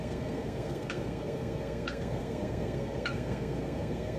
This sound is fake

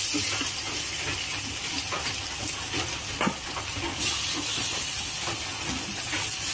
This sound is real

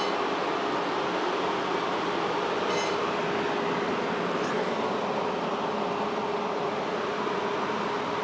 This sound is real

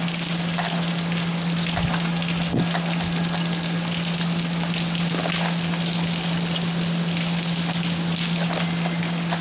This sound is real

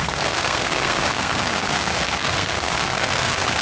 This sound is fake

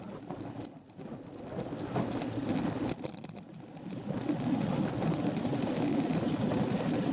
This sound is real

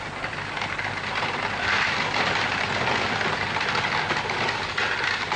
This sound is real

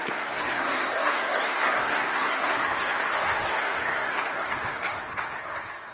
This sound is fake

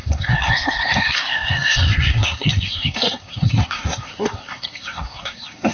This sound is fake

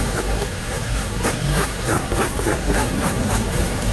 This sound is fake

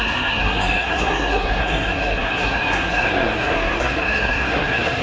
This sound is fake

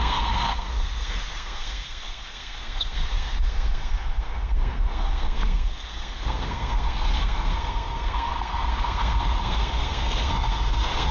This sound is fake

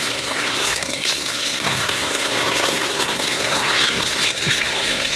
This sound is fake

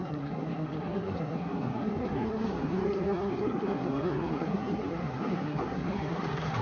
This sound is fake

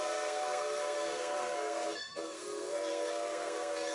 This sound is fake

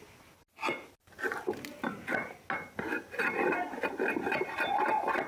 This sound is real